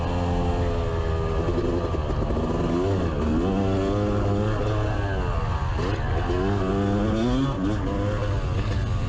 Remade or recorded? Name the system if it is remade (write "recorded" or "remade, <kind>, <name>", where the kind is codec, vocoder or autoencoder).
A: recorded